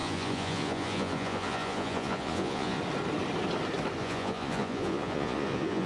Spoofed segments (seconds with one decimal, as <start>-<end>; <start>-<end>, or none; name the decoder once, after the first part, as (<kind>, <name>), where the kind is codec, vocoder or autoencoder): 0.0-2.8 (vocoder, Vocos); 4.0-5.9